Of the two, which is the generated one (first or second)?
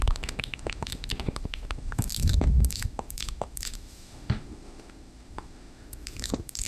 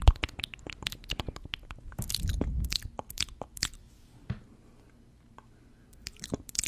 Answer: first